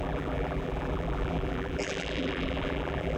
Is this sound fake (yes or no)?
yes